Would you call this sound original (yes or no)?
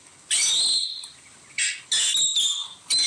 yes